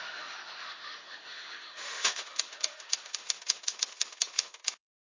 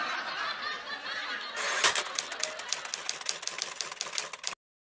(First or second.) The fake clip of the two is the first